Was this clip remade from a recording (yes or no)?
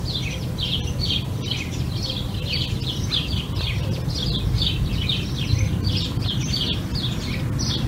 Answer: no